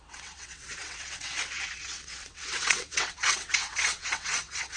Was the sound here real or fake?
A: fake